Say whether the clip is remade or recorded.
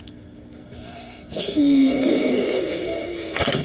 remade